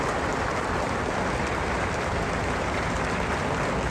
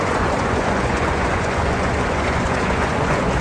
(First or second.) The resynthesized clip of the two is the second